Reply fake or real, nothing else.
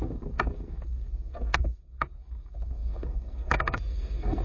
fake